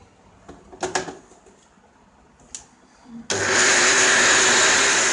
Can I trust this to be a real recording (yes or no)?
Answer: yes